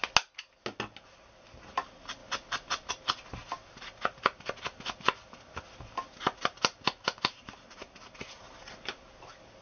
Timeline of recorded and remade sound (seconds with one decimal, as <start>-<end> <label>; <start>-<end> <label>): 0.0-9.6 recorded